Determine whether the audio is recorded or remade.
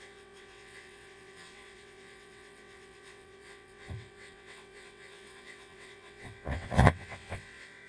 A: remade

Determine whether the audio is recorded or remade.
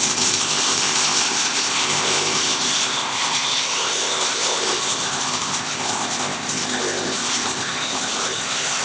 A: remade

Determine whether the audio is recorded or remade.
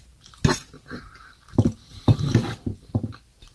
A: recorded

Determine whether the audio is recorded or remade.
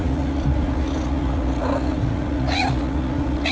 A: remade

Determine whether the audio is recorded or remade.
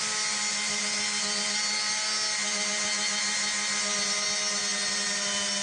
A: recorded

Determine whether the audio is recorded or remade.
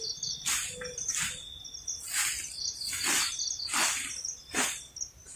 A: recorded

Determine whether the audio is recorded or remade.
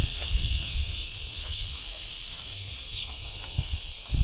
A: remade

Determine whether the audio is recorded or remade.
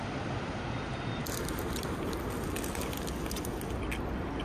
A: recorded